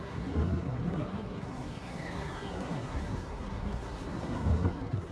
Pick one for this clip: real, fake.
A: fake